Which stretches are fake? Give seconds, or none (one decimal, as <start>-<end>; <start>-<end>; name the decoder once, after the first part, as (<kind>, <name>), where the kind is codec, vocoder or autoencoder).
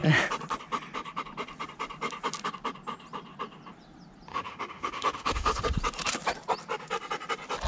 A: 4.3-5.6 (autoencoder, DAC-VAE)